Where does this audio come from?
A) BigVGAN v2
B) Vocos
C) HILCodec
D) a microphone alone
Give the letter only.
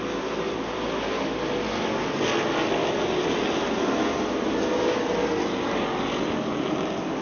D